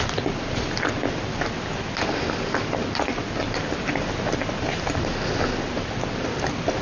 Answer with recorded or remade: recorded